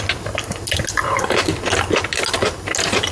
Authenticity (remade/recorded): recorded